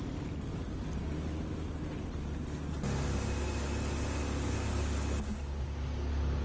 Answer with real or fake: real